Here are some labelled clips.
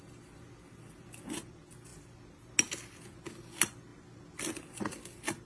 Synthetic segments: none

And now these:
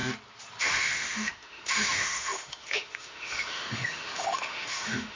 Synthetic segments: 0.6-5.2

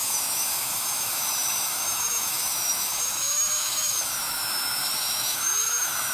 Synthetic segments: 0.0-6.1

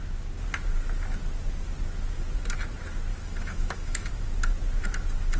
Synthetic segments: 3.1-4.1

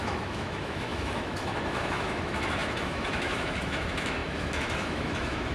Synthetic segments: 0.0-5.5

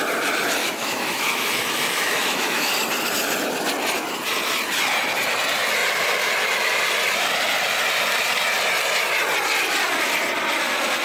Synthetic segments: 0.6-2.7